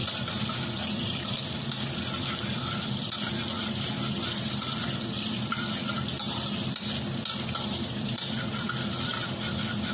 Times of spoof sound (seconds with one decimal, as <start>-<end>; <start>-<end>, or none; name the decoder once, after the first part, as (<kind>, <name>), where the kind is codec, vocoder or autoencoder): none